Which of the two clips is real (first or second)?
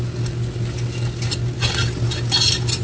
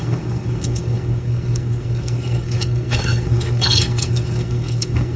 first